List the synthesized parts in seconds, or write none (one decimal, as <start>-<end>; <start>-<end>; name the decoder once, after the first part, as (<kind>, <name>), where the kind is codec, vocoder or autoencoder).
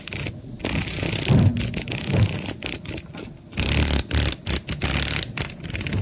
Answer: none